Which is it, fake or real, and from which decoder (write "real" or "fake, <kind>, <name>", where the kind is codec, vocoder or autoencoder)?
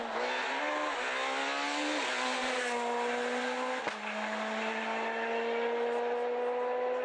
real